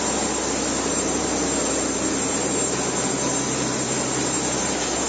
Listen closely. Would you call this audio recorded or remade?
recorded